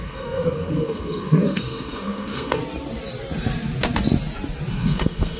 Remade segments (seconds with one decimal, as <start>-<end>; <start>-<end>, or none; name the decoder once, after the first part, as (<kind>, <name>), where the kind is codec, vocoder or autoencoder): 0.0-2.6 (codec, SNAC); 4.7-5.4